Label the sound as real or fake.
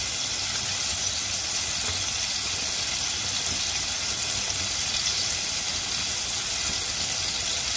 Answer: real